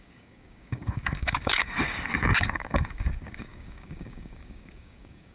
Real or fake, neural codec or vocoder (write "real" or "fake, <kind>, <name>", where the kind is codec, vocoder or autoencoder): fake, codec, DAC